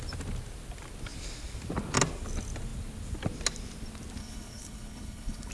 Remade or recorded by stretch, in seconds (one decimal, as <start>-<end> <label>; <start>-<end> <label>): 0.0-4.2 recorded; 4.2-5.5 remade